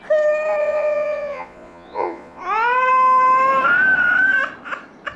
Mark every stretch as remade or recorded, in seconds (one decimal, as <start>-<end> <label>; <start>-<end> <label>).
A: 0.0-0.6 recorded; 0.6-2.4 remade; 2.4-5.2 recorded